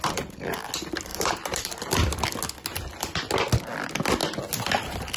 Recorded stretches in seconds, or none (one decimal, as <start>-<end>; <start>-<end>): 0.0-1.1; 1.9-5.2